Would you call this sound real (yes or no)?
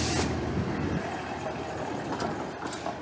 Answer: yes